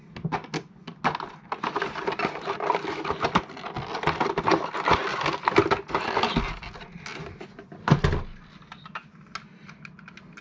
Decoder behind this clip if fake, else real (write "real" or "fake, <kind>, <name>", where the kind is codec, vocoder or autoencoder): real